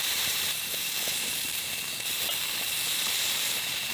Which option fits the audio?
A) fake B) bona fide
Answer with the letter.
A